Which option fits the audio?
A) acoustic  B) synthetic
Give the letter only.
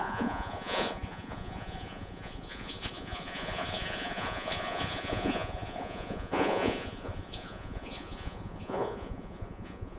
B